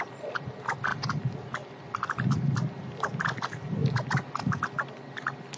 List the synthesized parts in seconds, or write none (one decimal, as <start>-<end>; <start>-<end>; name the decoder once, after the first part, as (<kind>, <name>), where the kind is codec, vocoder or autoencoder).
none